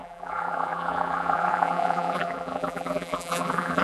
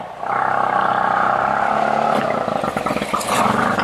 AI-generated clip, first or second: first